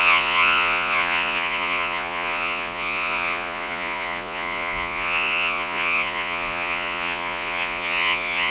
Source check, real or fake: fake